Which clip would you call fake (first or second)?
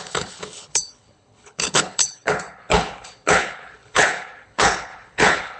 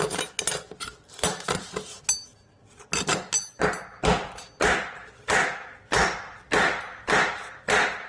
first